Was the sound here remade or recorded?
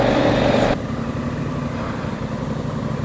remade